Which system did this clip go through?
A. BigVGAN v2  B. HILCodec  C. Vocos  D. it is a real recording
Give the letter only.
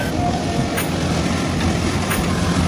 D